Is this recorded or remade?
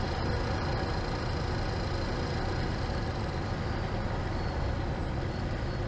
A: recorded